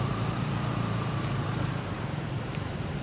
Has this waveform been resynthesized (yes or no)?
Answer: yes